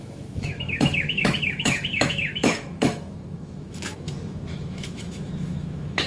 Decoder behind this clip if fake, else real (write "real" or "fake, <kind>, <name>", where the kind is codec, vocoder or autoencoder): fake, autoencoder, DAC-VAE